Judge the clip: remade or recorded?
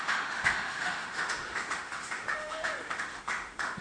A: remade